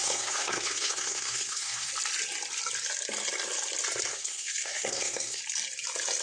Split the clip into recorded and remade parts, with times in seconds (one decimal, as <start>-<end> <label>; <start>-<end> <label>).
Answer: 0.0-1.9 remade; 1.9-4.1 recorded; 4.1-5.4 remade; 5.4-6.2 recorded